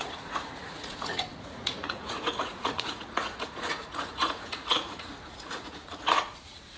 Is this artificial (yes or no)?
yes